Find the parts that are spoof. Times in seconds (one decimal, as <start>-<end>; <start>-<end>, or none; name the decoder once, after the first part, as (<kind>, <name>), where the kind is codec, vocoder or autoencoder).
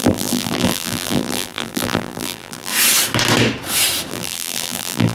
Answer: 0.0-2.7 (vocoder, BigVGAN v2); 4.1-5.1